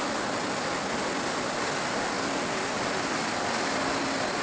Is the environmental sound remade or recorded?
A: recorded